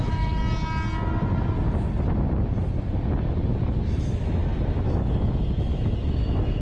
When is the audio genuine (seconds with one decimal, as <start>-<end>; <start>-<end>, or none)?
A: 0.4-4.0